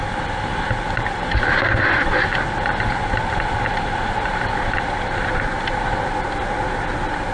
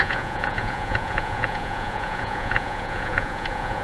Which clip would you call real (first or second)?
first